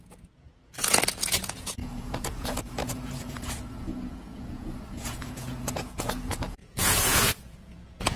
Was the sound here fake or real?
fake